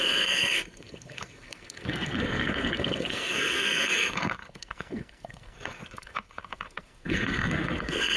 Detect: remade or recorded remade